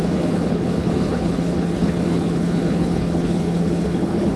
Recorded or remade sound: remade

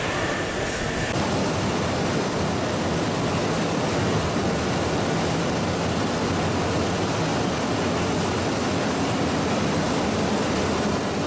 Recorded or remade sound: recorded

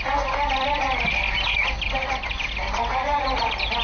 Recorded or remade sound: recorded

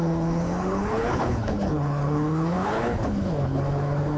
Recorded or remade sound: remade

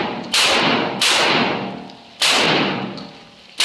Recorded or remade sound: recorded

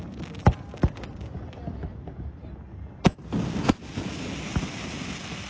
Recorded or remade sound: recorded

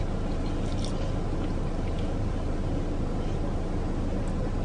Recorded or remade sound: recorded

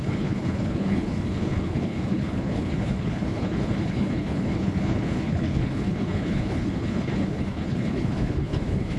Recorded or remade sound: remade